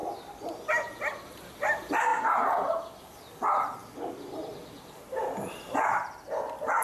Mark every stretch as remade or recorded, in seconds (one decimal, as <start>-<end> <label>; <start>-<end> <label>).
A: 0.0-1.3 recorded; 1.3-2.1 remade; 2.1-3.0 recorded; 3.0-6.8 remade